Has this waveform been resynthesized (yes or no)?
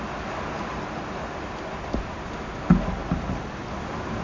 no